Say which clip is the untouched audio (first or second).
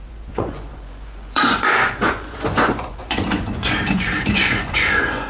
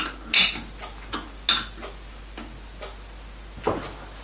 second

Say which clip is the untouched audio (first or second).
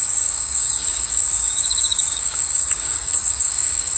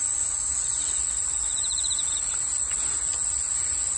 second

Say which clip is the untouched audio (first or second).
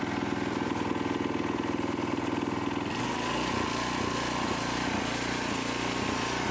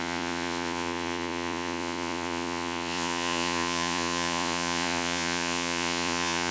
first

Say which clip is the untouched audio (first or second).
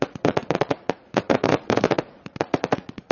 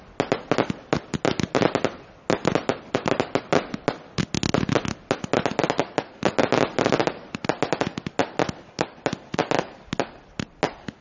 second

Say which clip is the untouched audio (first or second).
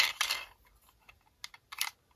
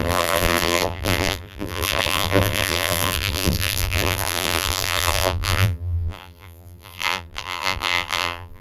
first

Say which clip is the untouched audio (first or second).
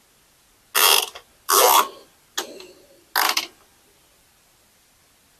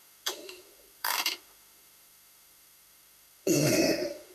first